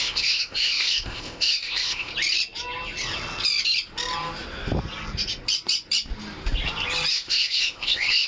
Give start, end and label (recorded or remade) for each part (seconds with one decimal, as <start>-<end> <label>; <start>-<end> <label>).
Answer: 0.0-2.1 remade; 2.1-7.1 recorded; 7.1-8.3 remade

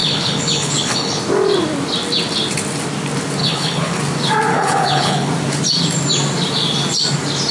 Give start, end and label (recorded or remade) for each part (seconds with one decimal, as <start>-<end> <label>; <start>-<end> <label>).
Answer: 0.0-1.2 remade; 1.2-3.4 recorded; 3.4-4.0 remade; 4.0-4.5 recorded; 4.5-5.3 remade; 5.3-7.5 recorded

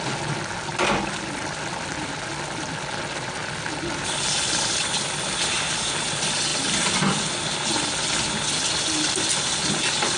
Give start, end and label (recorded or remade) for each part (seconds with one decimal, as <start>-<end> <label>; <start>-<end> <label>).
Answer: 0.0-0.7 recorded; 0.7-4.8 remade; 4.8-10.2 recorded

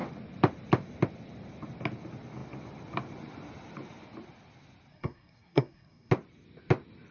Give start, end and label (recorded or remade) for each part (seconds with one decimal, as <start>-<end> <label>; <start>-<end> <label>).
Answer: 0.0-4.9 recorded; 4.9-6.1 remade; 6.1-7.1 recorded

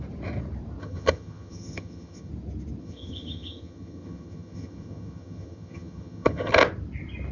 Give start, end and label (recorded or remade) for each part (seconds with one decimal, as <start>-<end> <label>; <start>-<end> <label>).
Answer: 0.0-0.8 recorded; 0.8-2.3 remade; 2.3-2.8 recorded; 2.8-6.5 remade; 6.5-7.3 recorded